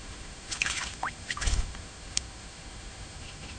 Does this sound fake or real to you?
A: fake